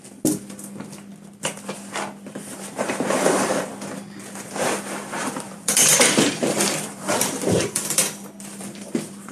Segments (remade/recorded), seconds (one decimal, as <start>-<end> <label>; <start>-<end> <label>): 0.0-2.3 recorded; 2.3-3.7 remade; 3.7-5.0 recorded; 5.0-8.0 remade; 8.0-8.6 recorded; 8.6-9.3 remade